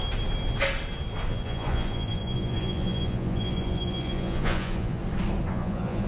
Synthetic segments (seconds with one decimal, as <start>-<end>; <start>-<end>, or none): 1.3-5.0; 5.5-6.1